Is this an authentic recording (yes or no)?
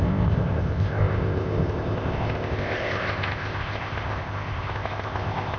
no